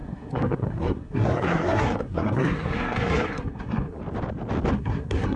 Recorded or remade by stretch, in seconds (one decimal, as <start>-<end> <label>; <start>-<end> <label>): 0.0-4.0 remade; 4.0-4.7 recorded; 4.7-5.4 remade